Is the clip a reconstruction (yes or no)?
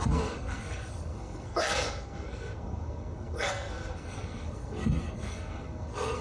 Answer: yes